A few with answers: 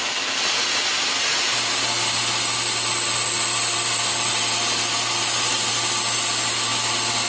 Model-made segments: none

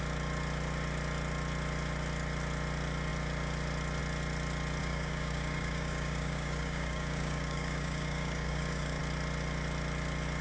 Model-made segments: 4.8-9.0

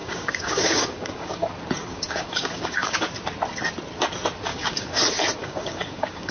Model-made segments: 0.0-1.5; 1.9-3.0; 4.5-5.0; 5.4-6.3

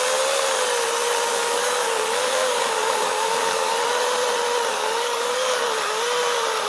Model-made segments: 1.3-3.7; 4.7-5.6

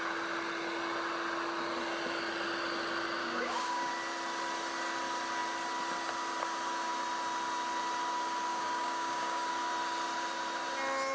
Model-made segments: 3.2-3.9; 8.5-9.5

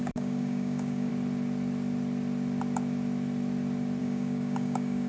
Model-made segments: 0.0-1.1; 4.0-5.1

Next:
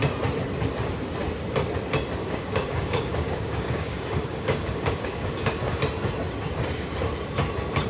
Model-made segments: 2.2-5.8

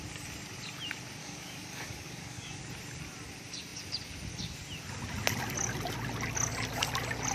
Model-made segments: 1.2-2.6